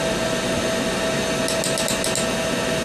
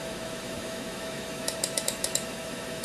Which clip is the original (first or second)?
first